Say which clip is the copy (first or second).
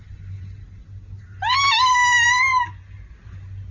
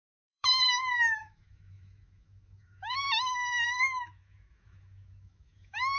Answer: second